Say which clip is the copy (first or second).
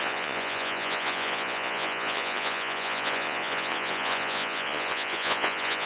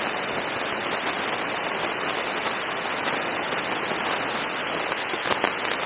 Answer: first